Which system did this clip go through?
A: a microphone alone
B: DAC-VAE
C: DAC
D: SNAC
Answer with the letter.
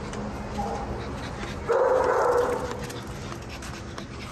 A